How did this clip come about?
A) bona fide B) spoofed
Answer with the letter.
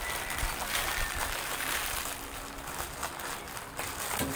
A